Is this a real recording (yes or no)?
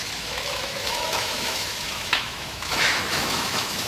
no